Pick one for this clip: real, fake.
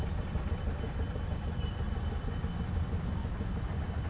real